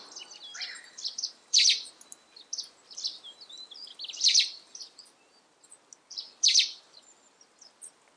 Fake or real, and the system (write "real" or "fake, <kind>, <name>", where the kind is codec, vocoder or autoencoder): real